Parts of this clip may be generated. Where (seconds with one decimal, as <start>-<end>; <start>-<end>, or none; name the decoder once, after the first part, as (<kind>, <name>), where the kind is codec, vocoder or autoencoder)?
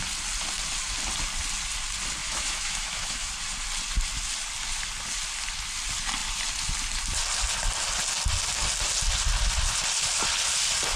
2.2-3.3 (autoencoder, DAC-VAE)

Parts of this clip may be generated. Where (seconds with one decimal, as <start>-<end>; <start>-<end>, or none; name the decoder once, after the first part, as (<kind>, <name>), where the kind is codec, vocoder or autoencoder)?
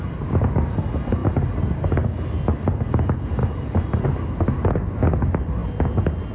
none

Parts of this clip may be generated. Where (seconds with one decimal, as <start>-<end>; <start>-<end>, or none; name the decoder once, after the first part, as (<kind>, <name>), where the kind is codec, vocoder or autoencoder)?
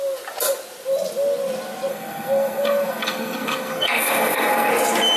1.9-4.7 (codec, SNAC)